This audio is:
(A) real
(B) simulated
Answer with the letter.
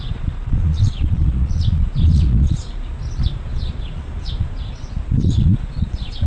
B